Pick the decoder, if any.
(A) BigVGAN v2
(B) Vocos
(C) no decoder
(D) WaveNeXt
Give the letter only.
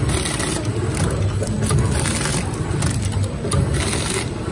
C